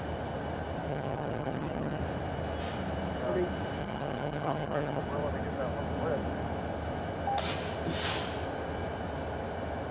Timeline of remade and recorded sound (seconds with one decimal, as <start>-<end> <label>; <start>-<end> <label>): 0.0-0.9 recorded; 0.9-2.0 remade; 2.0-3.8 recorded; 3.8-5.0 remade; 5.0-9.9 recorded